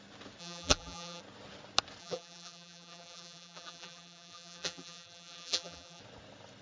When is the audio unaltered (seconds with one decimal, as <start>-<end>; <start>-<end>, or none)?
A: 0.0-0.4; 1.2-2.0; 6.0-6.6